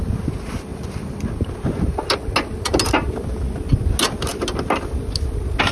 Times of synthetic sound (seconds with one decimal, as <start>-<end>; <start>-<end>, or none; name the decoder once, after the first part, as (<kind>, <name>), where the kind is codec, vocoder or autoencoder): none